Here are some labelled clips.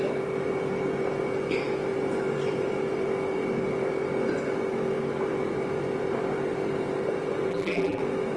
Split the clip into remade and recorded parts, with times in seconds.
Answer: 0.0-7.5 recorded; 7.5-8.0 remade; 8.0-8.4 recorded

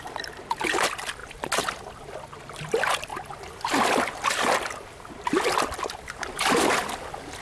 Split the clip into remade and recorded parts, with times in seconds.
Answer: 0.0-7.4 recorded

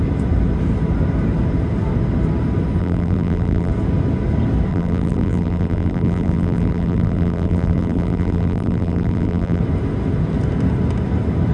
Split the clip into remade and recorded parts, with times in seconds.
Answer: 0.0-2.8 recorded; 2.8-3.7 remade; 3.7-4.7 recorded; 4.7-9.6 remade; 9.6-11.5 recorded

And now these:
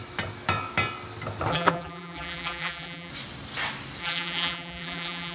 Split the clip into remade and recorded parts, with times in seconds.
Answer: 0.0-1.5 recorded; 1.5-3.1 remade; 3.1-4.0 recorded; 4.0-5.3 remade